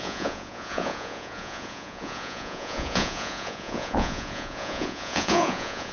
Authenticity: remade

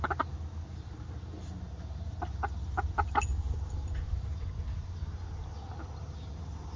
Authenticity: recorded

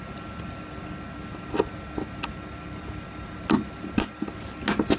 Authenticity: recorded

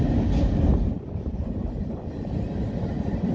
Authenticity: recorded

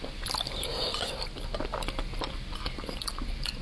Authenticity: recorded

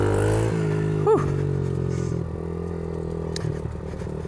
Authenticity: recorded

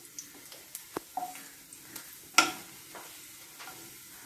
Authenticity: recorded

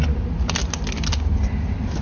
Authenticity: recorded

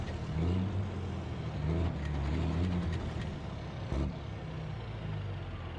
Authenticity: recorded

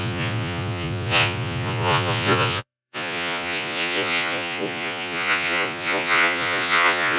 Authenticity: remade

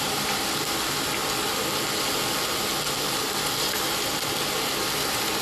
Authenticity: recorded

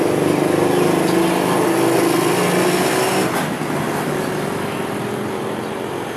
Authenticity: recorded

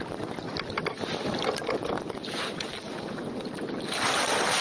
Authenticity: recorded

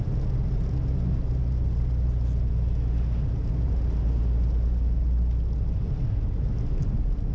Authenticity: recorded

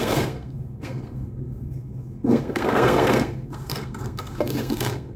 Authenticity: remade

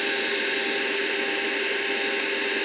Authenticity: recorded